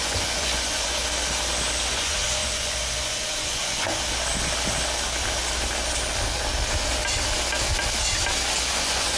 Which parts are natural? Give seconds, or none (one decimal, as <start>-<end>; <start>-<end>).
1.0-1.9; 3.9-8.7